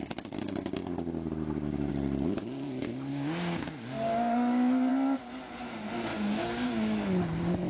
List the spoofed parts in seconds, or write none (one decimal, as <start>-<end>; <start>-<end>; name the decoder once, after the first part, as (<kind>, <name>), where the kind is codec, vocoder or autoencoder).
3.1-4.9 (codec, DAC); 6.1-6.7